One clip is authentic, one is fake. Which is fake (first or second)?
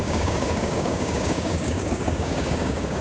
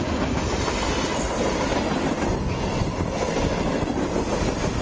first